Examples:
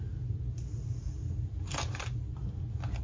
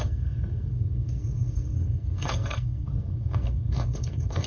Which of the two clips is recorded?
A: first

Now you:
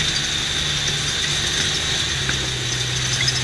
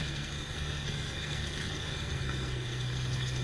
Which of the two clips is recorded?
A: first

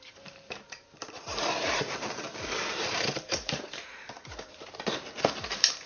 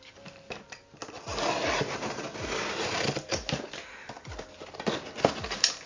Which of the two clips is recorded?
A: second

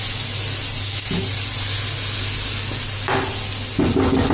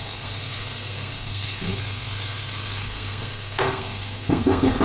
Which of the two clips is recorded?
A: first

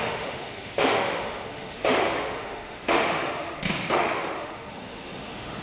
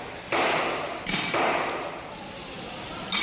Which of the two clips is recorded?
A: second